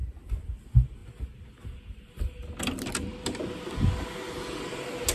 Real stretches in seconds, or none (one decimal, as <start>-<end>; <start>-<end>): 0.0-5.1